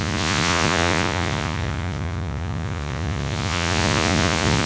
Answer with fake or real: fake